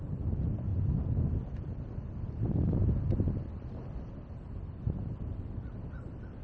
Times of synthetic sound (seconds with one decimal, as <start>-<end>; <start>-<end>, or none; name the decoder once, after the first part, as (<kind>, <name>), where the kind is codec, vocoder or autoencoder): none